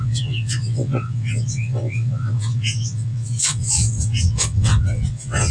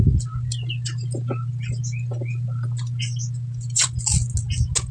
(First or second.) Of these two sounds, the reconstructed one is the first